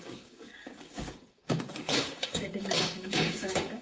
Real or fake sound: fake